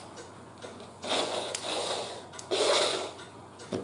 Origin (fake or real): fake